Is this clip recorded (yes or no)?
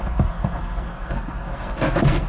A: no